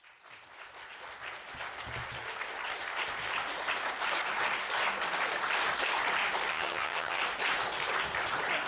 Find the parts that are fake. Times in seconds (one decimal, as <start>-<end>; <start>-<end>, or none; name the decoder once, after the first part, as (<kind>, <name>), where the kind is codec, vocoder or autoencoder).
6.5-7.2 (vocoder, HiFi-GAN)